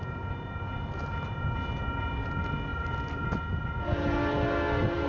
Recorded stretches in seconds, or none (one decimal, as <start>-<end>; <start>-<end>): 0.0-5.1

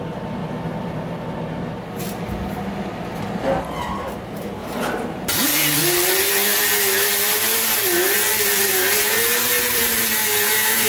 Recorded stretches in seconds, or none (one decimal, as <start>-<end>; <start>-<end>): 0.0-4.6; 5.8-8.3